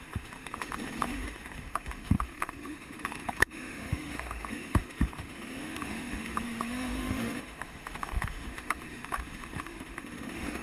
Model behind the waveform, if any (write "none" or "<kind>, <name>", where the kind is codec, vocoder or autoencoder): autoencoder, DAC-VAE